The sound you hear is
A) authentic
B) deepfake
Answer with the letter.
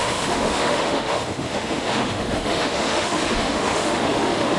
B